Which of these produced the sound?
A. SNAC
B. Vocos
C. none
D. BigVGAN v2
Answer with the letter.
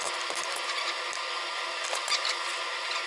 C